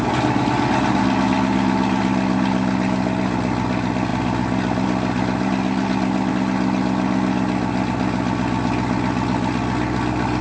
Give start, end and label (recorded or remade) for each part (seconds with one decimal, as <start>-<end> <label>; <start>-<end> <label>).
0.0-10.4 recorded